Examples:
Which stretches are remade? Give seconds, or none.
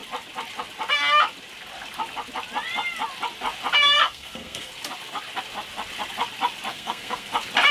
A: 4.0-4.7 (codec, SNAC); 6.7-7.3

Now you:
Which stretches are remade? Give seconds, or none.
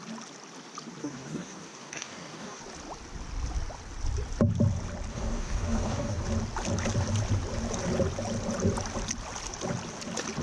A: 1.0-2.6 (codec, DAC); 5.1-6.2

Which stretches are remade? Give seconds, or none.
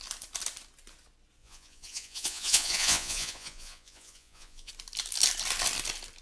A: 1.4-4.7 (vocoder, Vocos)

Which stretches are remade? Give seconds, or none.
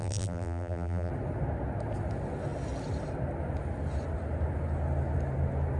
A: 0.0-1.1 (vocoder, BigVGAN v2)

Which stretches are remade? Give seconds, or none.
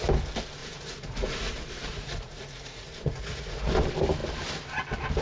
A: 0.6-3.7 (vocoder, Vocos)